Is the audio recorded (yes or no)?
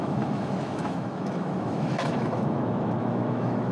no